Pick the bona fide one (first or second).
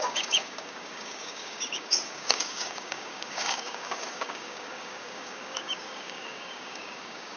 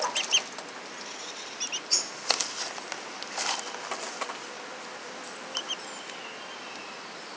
second